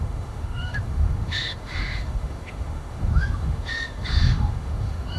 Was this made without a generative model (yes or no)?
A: no